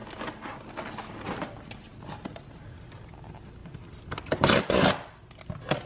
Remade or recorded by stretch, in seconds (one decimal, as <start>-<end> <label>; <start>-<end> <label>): 0.0-5.9 recorded